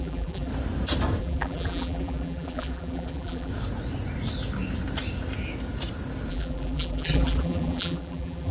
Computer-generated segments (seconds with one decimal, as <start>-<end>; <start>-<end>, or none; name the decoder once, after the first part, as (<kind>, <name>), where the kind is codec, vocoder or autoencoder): 0.0-0.5 (vocoder, BigVGAN v2); 1.2-3.5; 6.3-8.5